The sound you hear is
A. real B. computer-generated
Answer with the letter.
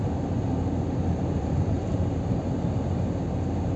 A